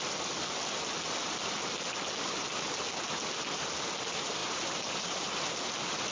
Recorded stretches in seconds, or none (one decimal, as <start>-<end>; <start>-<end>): 0.0-4.4; 5.6-6.1